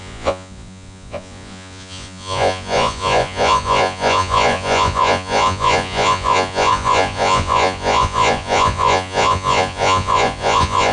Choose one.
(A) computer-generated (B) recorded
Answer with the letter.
A